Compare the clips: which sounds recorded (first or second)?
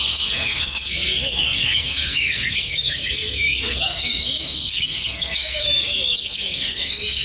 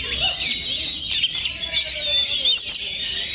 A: second